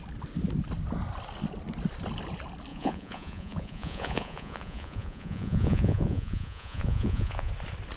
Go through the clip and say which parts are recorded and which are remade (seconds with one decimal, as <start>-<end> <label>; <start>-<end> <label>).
0.0-2.7 recorded; 2.7-7.5 remade; 7.5-8.0 recorded